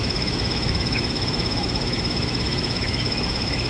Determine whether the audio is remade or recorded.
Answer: remade